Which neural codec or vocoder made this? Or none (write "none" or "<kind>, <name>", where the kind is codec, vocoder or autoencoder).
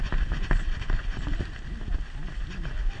none